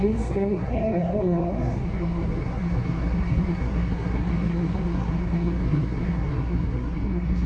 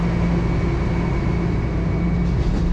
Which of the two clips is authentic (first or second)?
second